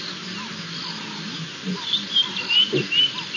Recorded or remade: recorded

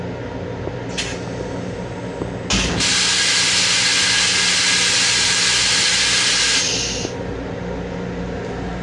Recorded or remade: recorded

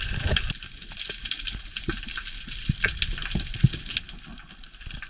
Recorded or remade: recorded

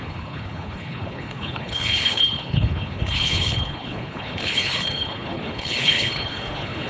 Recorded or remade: remade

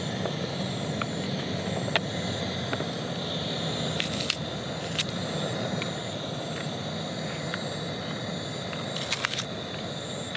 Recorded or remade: recorded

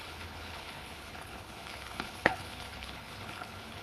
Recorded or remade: remade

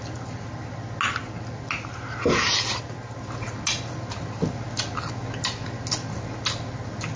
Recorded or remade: recorded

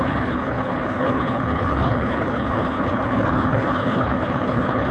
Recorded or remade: remade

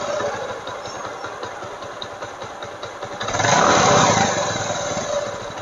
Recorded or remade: recorded